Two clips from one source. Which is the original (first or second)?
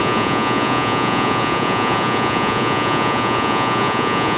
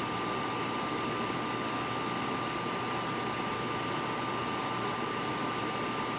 second